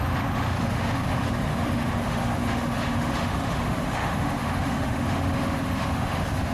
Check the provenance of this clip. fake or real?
fake